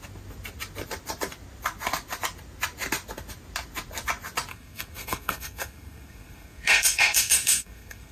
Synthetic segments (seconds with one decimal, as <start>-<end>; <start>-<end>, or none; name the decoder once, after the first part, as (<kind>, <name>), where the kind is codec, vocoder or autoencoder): 4.5-8.1 (codec, SNAC)